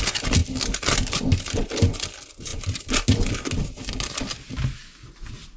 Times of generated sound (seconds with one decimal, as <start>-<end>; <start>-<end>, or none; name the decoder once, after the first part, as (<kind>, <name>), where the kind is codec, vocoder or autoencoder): none